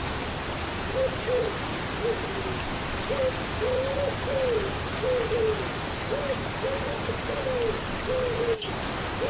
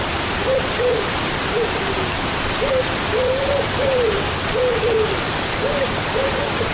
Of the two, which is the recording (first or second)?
first